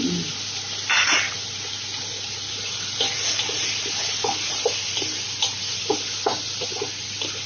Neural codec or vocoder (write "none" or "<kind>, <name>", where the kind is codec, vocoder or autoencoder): none